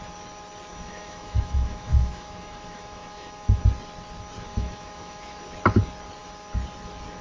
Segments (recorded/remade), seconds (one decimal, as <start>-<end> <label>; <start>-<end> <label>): 0.0-0.7 recorded; 0.7-3.6 remade; 3.6-4.5 recorded; 4.5-5.4 remade; 5.4-7.2 recorded

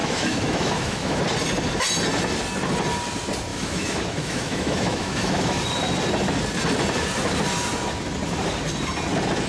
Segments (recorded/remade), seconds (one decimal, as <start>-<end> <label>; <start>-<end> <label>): 0.0-1.2 remade; 1.2-3.5 recorded; 3.5-5.6 remade; 5.6-9.5 recorded

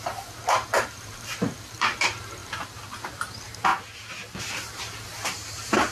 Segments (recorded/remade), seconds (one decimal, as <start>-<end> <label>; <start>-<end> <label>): 0.0-3.7 remade; 3.7-4.4 recorded; 4.4-5.9 remade

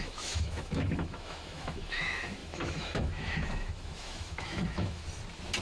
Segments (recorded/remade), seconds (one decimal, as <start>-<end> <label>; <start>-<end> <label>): 0.0-5.0 remade; 5.0-5.6 recorded

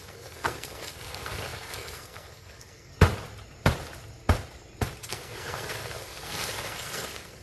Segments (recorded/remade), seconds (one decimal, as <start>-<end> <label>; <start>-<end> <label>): 0.0-2.9 remade; 2.9-5.0 recorded; 5.0-7.4 remade

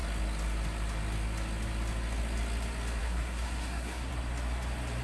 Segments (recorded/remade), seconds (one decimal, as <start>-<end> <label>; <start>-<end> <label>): 0.0-3.0 recorded; 3.0-4.1 remade; 4.1-5.0 recorded

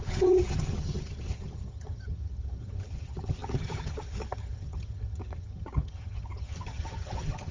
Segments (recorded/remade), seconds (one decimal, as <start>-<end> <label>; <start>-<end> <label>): 0.0-7.5 remade